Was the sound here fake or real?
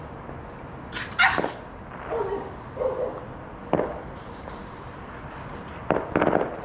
real